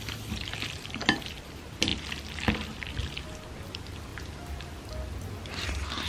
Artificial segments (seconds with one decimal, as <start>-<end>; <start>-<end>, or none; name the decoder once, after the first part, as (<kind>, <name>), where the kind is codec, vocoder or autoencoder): 1.9-2.9 (vocoder, BigVGAN v2); 4.1-5.2